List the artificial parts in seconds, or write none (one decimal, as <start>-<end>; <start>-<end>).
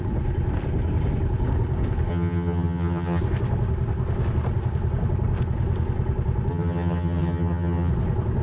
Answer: 2.1-3.2; 6.5-7.9